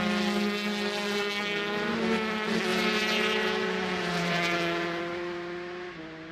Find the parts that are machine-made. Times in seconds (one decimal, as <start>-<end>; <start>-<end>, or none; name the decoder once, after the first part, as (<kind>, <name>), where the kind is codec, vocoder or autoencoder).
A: 2.7-5.0 (vocoder, Vocos)